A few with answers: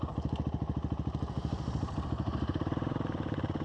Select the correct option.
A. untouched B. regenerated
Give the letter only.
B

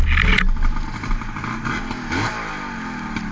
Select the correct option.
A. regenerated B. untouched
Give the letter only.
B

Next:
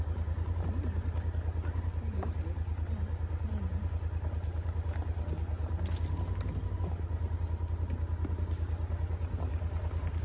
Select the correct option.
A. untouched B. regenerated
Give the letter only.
A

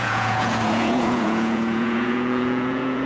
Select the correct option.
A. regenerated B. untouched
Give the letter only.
A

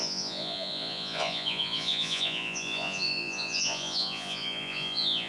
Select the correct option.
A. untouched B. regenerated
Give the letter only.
B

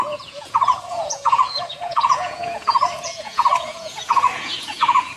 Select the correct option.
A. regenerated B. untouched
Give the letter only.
A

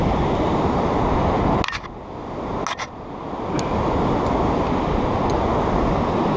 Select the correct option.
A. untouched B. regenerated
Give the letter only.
A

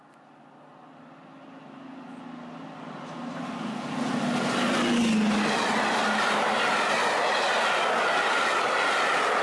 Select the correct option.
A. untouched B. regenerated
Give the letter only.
A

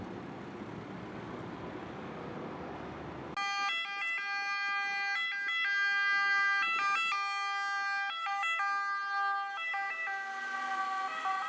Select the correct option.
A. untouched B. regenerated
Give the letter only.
A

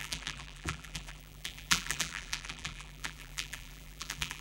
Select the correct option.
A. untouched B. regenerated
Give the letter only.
B